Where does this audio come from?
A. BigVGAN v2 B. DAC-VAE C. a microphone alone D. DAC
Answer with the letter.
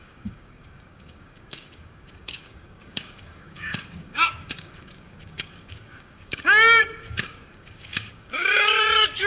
D